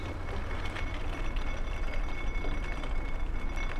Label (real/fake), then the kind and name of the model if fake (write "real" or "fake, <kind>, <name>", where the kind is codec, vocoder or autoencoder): real